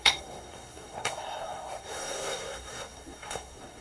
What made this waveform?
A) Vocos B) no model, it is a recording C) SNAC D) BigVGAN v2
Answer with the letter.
C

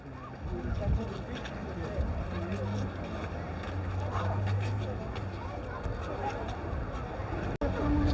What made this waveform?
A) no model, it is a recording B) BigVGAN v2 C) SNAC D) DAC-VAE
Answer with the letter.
A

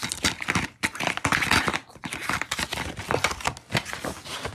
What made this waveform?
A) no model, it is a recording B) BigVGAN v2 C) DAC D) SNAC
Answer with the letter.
A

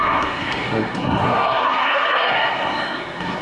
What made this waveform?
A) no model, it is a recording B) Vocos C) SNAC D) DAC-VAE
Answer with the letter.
C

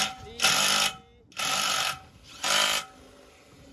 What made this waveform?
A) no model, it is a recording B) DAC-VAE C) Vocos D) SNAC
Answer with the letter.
A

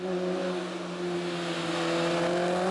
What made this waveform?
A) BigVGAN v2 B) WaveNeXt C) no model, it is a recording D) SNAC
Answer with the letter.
C